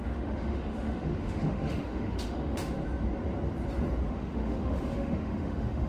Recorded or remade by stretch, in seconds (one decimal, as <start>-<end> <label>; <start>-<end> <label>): 0.0-2.8 remade; 2.8-4.1 recorded; 4.1-5.9 remade